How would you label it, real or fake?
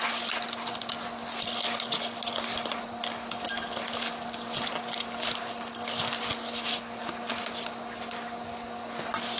real